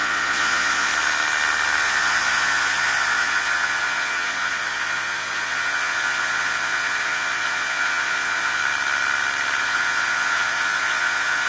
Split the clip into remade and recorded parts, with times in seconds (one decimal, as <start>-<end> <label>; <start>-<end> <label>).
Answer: 0.0-0.9 remade; 0.9-1.8 recorded; 1.8-8.6 remade; 8.6-9.6 recorded; 9.6-11.5 remade